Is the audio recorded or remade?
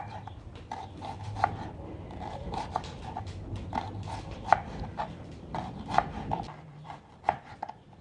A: remade